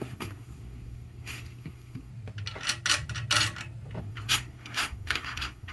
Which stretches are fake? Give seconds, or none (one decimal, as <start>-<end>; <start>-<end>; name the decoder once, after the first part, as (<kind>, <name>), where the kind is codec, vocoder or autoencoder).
0.0-2.1 (codec, SNAC); 4.0-5.7